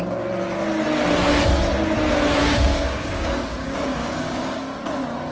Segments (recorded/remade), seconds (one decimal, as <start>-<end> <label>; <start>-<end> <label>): 0.0-2.4 recorded; 2.4-4.6 remade; 4.6-5.3 recorded